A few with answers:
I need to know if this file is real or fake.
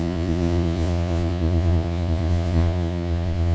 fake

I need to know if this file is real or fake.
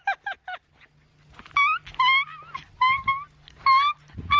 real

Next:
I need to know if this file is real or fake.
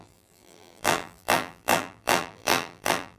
fake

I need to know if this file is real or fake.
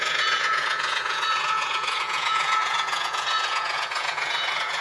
fake